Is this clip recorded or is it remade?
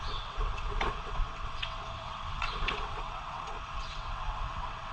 remade